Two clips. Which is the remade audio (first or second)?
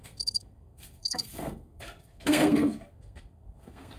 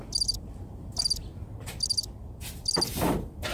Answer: first